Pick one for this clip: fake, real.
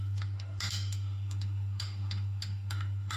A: fake